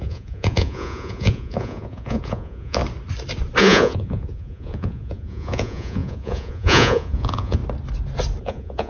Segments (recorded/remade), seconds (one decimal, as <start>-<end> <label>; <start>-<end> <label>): 0.0-2.8 remade; 2.8-3.6 recorded; 3.6-7.6 remade; 7.6-8.4 recorded; 8.4-8.9 remade